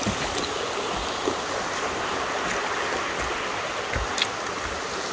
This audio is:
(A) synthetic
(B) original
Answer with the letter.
B